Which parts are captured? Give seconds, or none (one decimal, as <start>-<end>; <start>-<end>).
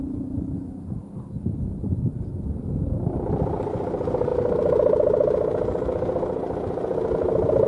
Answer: 1.0-1.6; 4.3-7.1